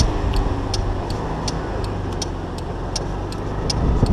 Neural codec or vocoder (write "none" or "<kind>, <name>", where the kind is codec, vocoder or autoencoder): none